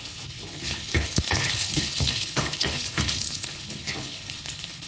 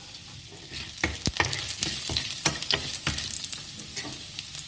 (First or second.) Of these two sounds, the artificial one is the first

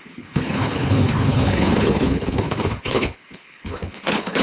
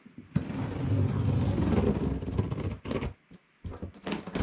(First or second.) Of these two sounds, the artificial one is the first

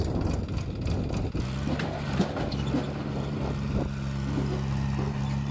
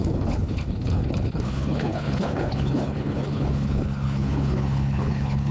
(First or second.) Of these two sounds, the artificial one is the second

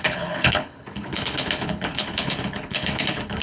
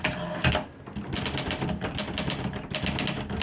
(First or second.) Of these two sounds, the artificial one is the first